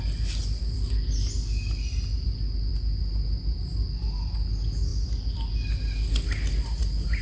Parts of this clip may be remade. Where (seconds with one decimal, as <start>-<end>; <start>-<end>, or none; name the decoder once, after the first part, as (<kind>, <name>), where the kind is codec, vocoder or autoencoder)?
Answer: none